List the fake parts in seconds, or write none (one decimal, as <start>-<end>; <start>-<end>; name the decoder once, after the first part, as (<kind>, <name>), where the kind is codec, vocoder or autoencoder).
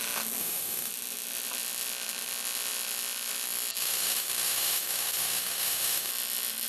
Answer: 0.4-0.9 (autoencoder, DAC-VAE); 3.8-6.1